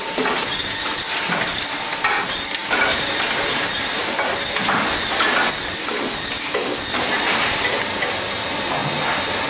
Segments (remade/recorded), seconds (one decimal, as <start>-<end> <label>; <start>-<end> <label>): 0.0-9.5 recorded